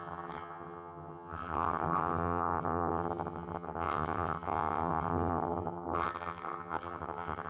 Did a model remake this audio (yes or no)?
yes